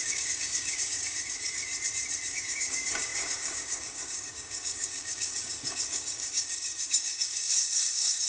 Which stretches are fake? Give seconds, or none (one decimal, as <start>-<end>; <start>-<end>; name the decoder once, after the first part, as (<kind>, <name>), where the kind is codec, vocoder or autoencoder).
0.0-1.7 (codec, DAC); 2.3-8.3